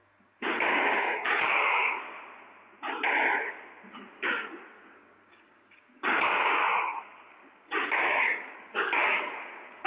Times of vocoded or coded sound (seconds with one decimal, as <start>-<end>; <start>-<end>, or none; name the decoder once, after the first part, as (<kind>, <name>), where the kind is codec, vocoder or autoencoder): 0.0-2.0 (codec, DAC); 3.9-6.6; 7.3-9.9